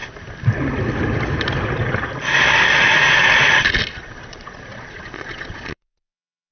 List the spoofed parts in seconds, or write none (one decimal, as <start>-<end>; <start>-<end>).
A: 3.9-6.5